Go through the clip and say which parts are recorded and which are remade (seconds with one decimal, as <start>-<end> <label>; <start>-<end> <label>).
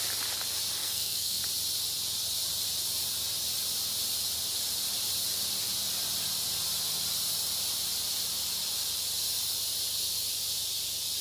0.0-0.8 recorded; 0.8-1.4 remade; 1.4-11.2 recorded